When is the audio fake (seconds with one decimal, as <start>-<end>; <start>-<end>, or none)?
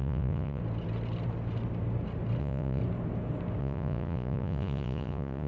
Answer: 0.0-0.6; 2.4-2.8; 3.6-5.5